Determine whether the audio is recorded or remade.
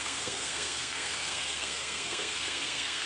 remade